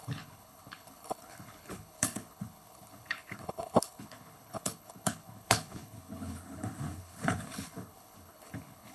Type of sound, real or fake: fake